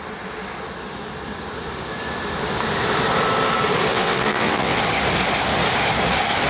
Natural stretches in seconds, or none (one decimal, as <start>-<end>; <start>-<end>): 0.0-3.9; 4.8-6.5